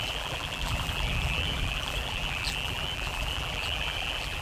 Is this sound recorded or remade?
remade